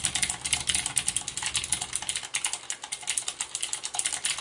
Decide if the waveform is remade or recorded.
recorded